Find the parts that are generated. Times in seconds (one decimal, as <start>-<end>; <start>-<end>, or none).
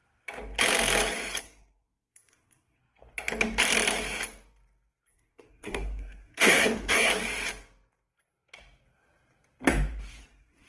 1.4-2.8; 5.1-7.1; 10.2-10.7